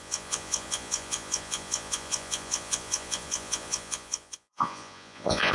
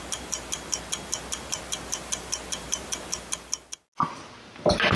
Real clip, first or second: second